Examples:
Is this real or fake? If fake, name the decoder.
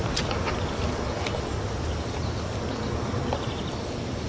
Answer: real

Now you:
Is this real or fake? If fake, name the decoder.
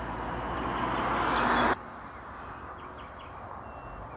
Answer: real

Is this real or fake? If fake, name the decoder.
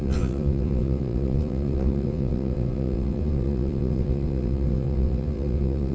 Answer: fake, vocoder, WaveNeXt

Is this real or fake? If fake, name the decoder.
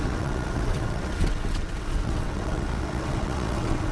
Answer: fake, vocoder, WaveNeXt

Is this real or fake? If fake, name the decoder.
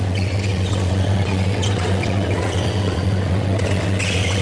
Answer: fake, vocoder, WaveNeXt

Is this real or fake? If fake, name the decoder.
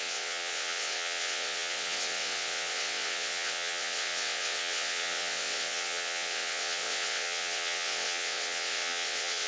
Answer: fake, vocoder, WaveNeXt